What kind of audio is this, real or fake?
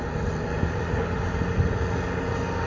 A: real